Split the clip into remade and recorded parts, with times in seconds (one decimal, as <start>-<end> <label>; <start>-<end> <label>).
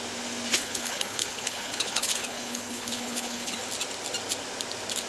0.0-0.5 recorded; 0.5-3.6 remade; 3.6-5.1 recorded